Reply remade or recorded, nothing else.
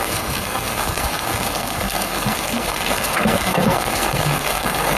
remade